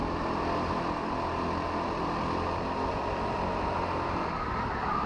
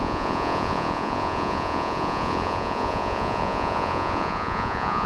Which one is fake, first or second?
second